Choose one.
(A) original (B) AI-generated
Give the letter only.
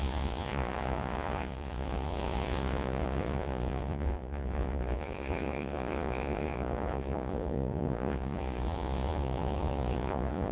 B